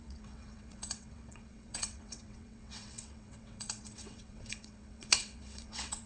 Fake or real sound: fake